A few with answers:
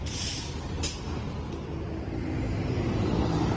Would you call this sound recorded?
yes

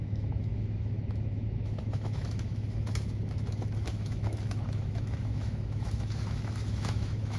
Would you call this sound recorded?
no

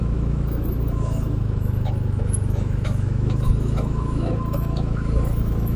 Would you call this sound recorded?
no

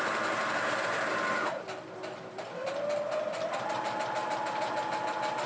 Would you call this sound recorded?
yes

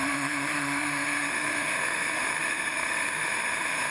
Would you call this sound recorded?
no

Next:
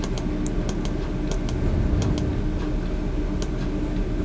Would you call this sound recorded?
yes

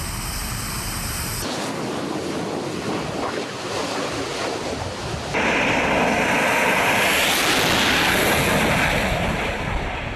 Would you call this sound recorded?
yes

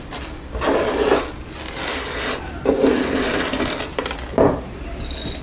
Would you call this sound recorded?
yes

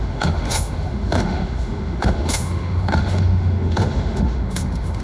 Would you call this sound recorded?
no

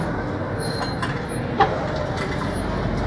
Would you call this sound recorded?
yes